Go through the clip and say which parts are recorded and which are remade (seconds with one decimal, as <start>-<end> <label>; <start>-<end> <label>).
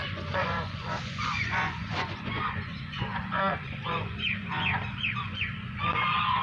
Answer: 0.0-6.4 remade